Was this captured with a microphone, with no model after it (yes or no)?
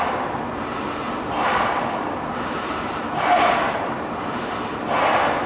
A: no